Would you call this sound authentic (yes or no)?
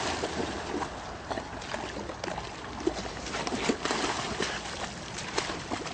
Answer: yes